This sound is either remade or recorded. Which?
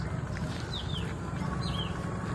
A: recorded